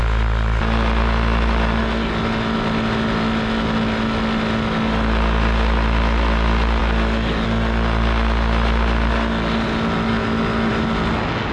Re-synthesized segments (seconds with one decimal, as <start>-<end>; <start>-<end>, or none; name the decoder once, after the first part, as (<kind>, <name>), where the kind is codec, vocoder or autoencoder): none